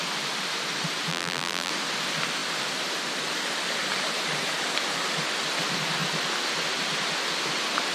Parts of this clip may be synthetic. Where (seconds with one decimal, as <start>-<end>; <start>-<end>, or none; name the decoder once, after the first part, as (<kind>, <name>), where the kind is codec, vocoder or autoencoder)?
1.1-1.7 (vocoder, BigVGAN v2)